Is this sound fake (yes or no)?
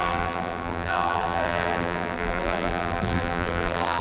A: yes